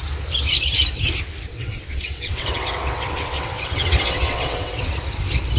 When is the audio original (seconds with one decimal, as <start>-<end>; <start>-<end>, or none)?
0.0-1.5; 4.9-5.6